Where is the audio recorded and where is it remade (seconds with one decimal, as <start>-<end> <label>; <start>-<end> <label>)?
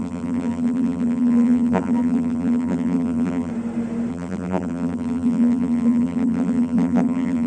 0.0-3.5 remade; 3.5-4.1 recorded; 4.1-7.5 remade